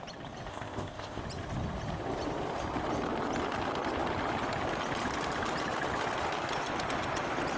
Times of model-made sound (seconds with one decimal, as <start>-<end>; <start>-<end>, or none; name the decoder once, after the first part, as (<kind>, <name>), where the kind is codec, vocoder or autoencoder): 0.5-1.2 (codec, ZipCodec)